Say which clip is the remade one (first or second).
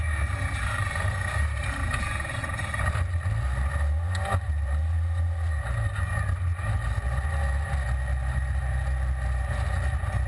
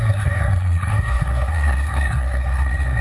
second